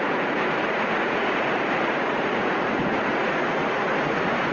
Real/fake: fake